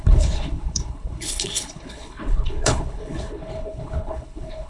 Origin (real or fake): fake